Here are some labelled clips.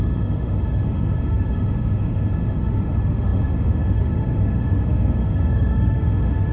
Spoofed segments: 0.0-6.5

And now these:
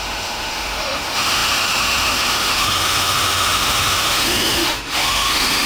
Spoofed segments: 0.0-5.7

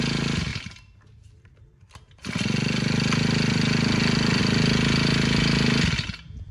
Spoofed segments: none

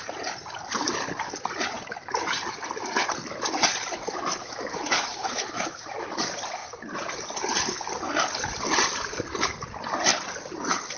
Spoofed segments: 4.4-6.1

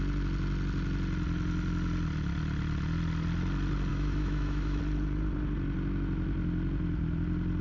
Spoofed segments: 3.9-4.8